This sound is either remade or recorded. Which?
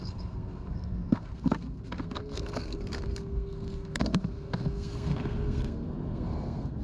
remade